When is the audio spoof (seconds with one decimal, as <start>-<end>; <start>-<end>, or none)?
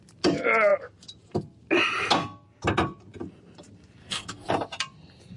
4.0-4.5